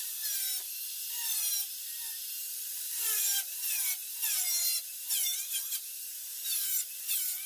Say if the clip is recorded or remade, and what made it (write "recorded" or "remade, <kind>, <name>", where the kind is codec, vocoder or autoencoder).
recorded